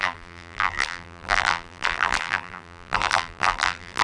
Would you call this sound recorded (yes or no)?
no